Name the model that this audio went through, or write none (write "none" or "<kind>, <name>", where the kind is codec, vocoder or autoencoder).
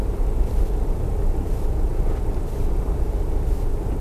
none